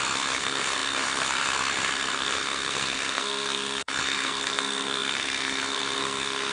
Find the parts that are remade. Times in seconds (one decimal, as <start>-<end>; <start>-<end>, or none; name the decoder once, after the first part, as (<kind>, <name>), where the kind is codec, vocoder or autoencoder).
0.0-6.5 (codec, SNAC)